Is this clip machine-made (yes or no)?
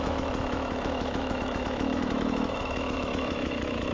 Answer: yes